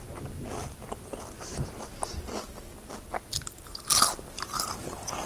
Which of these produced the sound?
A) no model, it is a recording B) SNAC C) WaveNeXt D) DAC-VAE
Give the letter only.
A